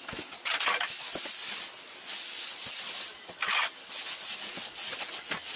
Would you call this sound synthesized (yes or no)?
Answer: no